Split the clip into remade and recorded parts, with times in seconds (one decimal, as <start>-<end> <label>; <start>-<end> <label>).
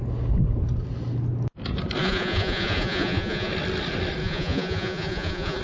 0.0-2.0 recorded; 2.0-3.5 remade; 3.5-4.2 recorded; 4.2-5.6 remade